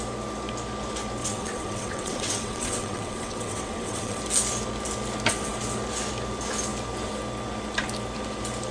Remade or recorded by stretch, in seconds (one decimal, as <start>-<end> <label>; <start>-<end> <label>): 0.0-1.2 recorded; 1.2-4.2 remade; 4.2-8.7 recorded